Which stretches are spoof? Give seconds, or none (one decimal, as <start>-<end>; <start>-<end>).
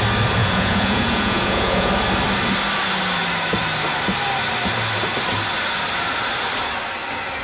0.4-1.9